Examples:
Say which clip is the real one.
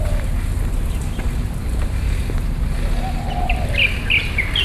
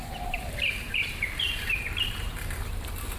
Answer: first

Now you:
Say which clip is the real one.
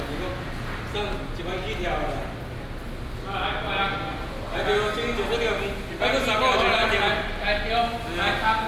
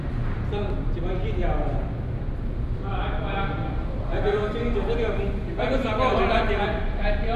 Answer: first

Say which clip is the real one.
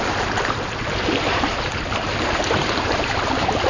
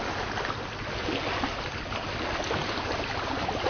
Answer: second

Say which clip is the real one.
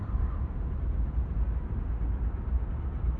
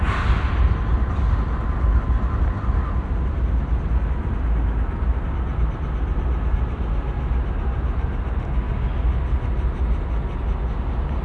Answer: second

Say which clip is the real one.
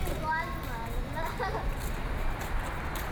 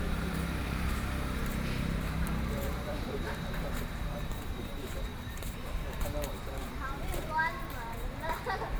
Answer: first